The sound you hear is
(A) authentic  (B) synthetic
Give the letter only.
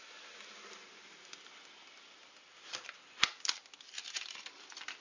A